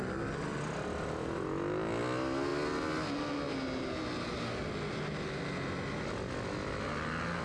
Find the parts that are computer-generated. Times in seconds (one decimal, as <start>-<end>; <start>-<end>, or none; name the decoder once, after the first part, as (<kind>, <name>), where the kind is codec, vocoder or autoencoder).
none